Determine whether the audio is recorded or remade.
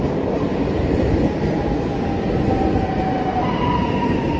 recorded